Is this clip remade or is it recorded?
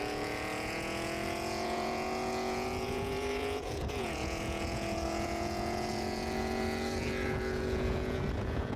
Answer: remade